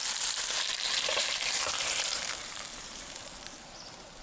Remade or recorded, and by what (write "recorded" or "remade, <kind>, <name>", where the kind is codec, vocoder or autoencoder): remade, vocoder, BigVGAN v2